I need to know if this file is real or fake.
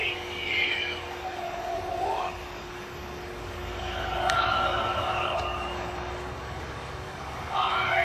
fake